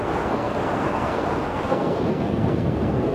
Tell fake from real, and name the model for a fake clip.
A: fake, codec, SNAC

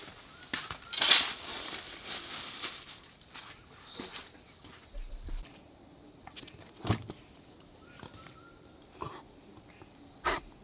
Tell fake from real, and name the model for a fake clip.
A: real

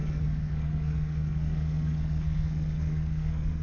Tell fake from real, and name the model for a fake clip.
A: fake, codec, SNAC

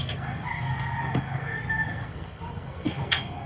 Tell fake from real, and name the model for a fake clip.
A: fake, codec, SNAC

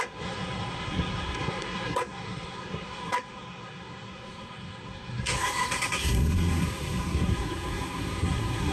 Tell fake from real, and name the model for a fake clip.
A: fake, codec, SNAC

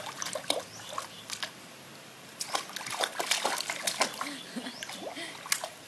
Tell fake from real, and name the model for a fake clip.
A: real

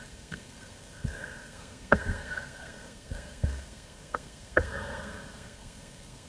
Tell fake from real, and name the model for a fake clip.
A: fake, codec, SNAC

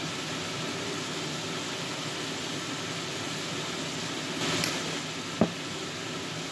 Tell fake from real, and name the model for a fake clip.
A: real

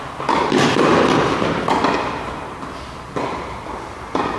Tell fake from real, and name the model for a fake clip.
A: real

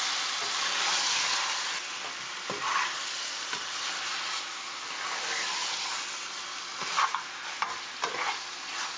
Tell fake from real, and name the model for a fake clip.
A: real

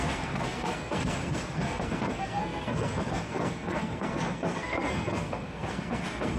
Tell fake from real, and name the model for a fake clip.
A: fake, codec, SNAC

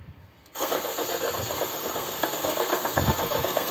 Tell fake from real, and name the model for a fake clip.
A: fake, codec, SNAC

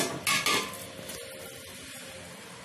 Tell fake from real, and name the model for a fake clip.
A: real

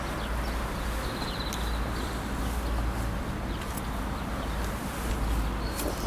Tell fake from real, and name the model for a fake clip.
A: real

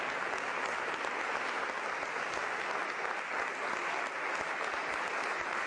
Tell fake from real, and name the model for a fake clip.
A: real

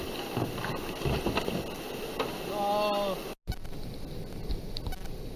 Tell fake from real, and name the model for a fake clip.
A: real